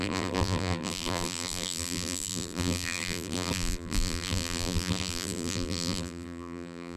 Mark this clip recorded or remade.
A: remade